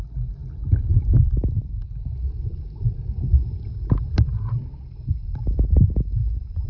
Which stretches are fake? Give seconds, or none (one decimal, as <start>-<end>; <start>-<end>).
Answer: 6.2-6.7